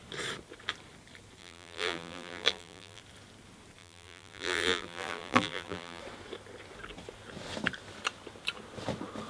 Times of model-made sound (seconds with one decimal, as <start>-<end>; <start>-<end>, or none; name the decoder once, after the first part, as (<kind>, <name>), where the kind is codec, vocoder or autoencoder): 1.4-3.0 (vocoder, BigVGAN v2); 3.8-6.0